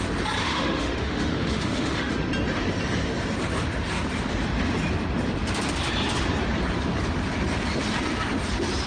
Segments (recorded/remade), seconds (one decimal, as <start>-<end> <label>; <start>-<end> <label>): 0.0-0.4 recorded; 0.4-2.1 remade; 2.1-8.9 recorded